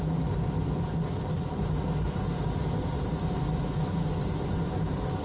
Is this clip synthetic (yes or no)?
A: no